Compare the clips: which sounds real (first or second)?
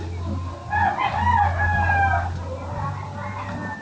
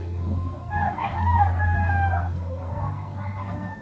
first